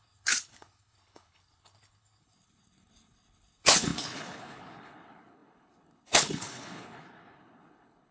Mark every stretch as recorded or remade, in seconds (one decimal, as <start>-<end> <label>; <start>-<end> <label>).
0.0-8.1 remade